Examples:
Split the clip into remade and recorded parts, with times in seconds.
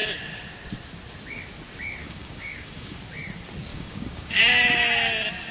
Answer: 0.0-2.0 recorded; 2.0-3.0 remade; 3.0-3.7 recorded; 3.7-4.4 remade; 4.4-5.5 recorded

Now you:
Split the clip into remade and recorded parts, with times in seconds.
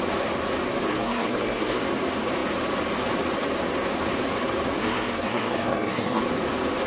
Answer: 0.0-0.9 recorded; 0.9-1.8 remade; 1.8-4.8 recorded; 4.8-6.2 remade; 6.2-6.9 recorded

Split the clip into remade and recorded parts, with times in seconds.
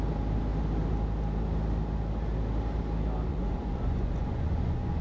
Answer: 0.0-3.3 recorded; 3.3-5.0 remade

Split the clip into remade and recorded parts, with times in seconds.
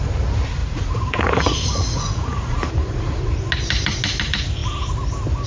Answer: 0.0-0.6 recorded; 0.6-3.3 remade; 3.3-5.5 recorded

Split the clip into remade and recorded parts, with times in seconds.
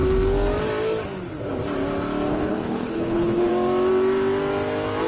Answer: 0.0-2.3 recorded; 2.3-3.5 remade; 3.5-5.1 recorded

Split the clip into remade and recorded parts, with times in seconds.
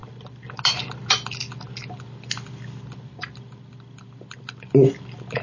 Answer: 0.0-5.4 recorded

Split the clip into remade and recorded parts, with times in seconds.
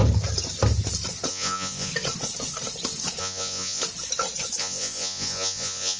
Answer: 0.0-1.3 recorded; 1.3-1.9 remade; 1.9-3.2 recorded; 3.2-3.8 remade; 3.8-4.6 recorded; 4.6-6.0 remade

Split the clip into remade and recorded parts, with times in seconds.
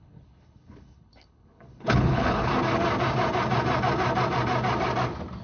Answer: 0.0-2.5 remade; 2.5-5.4 recorded